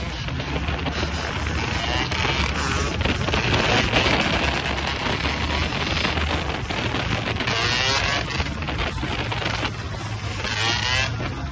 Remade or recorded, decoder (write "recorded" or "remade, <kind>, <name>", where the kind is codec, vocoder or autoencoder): recorded